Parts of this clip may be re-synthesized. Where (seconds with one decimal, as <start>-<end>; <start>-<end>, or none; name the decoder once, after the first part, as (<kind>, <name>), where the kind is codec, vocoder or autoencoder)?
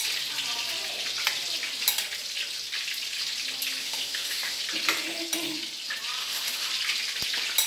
3.8-4.6 (autoencoder, DAC-VAE); 6.2-6.7